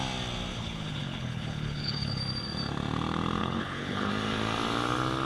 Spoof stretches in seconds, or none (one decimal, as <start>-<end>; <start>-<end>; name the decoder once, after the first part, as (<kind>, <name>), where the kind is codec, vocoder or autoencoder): 0.5-2.2 (codec, HILCodec); 3.4-4.1